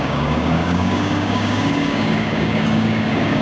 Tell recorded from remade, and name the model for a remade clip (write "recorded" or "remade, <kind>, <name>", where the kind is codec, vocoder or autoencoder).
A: remade, codec, DAC